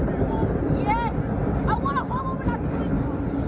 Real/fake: real